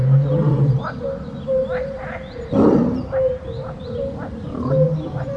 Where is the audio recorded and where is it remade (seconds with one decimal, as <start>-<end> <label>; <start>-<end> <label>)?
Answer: 0.0-5.4 recorded